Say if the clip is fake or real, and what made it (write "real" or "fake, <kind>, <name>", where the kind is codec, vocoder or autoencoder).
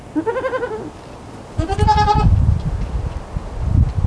real